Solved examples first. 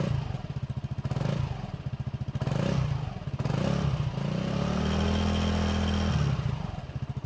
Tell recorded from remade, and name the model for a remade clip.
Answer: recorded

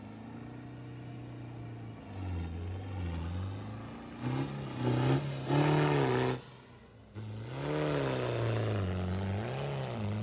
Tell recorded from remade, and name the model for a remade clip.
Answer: recorded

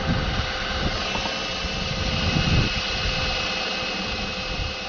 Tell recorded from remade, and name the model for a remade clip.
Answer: recorded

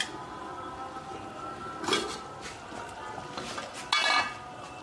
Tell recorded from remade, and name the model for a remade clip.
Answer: recorded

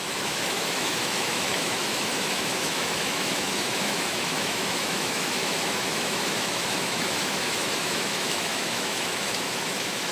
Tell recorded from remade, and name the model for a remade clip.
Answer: remade, autoencoder, DAC-VAE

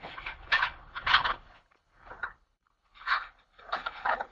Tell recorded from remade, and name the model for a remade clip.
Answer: remade, codec, HILCodec